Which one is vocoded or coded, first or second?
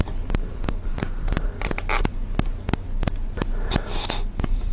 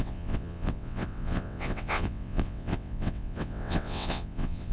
second